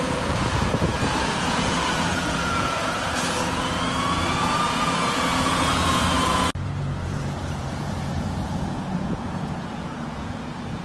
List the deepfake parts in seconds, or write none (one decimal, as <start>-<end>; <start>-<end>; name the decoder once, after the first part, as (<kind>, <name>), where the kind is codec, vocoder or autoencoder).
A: 0.0-10.8 (vocoder, Vocos)